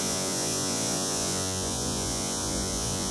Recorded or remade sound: remade